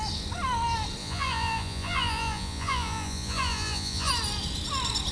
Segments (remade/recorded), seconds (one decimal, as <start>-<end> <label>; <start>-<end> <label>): 0.0-1.0 recorded; 1.0-4.1 remade; 4.1-5.1 recorded